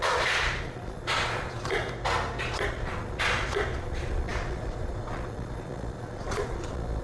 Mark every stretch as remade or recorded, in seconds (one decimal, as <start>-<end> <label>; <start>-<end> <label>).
0.0-1.8 remade; 1.8-2.4 recorded; 2.4-7.0 remade